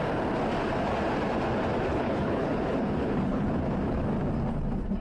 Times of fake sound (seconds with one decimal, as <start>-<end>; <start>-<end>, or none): 1.9-3.5